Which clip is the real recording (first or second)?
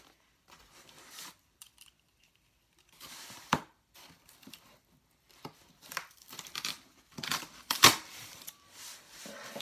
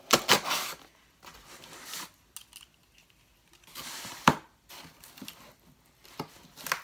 second